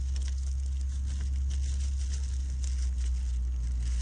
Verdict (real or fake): real